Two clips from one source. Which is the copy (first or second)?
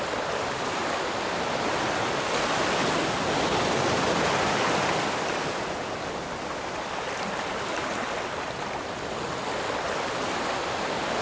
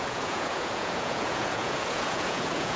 second